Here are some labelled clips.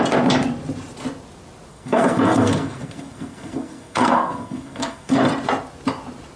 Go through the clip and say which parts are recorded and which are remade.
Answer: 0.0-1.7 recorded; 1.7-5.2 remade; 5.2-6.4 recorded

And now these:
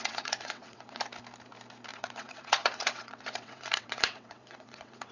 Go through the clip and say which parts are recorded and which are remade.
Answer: 0.0-1.0 remade; 1.0-1.9 recorded; 1.9-5.1 remade

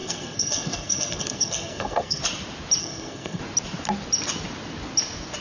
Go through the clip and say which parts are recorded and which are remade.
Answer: 0.0-2.2 remade; 2.2-2.8 recorded; 2.8-3.4 remade; 3.4-5.4 recorded

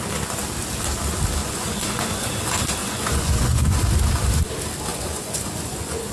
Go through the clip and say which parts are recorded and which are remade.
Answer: 0.0-1.4 recorded; 1.4-2.3 remade; 2.3-2.8 recorded; 2.8-3.8 remade; 3.8-4.9 recorded; 4.9-6.1 remade

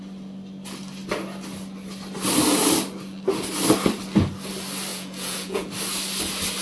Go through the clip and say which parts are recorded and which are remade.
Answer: 0.0-4.9 recorded; 4.9-5.7 remade; 5.7-6.6 recorded

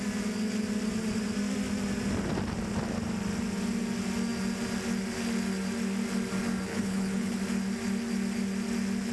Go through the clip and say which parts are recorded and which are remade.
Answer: 0.0-6.7 recorded; 6.7-7.4 remade; 7.4-9.1 recorded